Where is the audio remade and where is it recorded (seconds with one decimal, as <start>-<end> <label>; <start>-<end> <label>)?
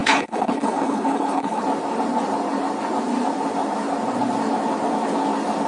0.0-1.6 remade; 1.6-5.7 recorded